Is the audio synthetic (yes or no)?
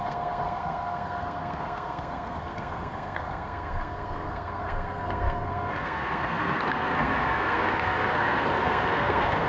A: yes